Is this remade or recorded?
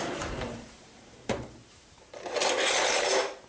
remade